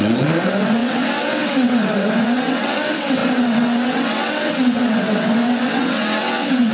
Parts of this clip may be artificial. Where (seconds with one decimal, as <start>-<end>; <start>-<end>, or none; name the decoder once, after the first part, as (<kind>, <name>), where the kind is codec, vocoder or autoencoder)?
0.0-6.7 (vocoder, WaveNeXt)